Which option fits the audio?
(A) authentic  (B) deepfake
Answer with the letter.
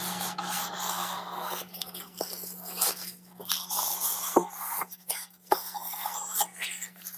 B